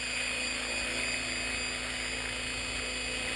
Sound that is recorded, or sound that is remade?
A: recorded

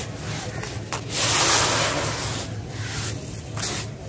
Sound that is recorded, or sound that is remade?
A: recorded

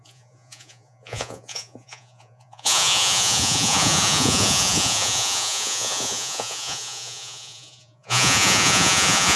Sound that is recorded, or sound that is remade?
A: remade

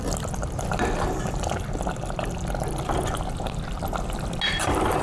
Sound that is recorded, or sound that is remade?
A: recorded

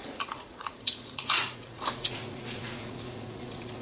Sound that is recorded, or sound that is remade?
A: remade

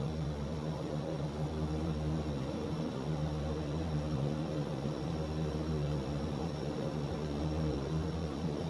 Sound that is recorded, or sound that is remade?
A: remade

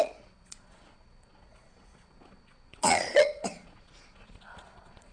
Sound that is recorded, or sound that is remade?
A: remade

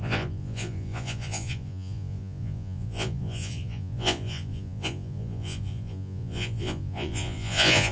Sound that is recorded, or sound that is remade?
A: remade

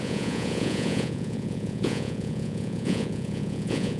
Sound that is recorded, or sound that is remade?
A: remade